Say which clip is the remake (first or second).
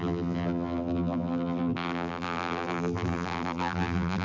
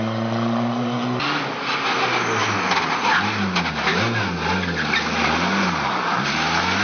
first